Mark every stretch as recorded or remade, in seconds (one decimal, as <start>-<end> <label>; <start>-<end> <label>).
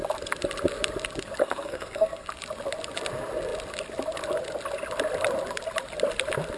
0.0-1.4 recorded; 1.4-2.3 remade; 2.3-6.6 recorded